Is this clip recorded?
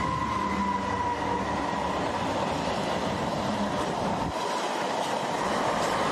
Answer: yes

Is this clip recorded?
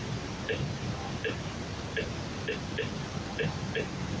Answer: yes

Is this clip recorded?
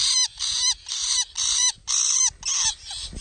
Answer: yes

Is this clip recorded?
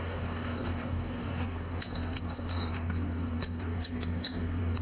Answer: no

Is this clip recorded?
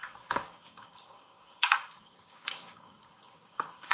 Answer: no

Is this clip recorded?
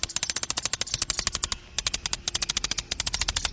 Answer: yes